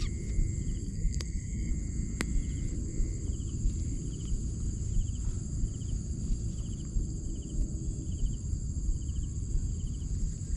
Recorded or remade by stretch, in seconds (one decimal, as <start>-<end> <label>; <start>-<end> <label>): 0.0-0.8 recorded; 0.8-1.7 remade; 1.7-10.6 recorded